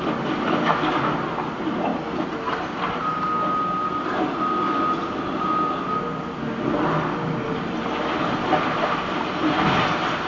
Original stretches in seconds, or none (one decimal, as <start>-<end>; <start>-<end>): 0.0-10.3